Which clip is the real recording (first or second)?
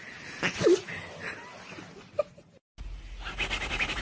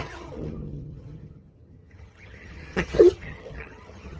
first